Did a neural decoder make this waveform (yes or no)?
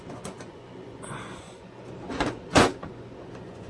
yes